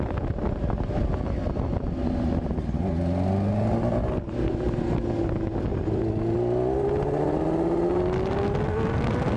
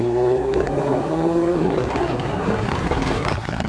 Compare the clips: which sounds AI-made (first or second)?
second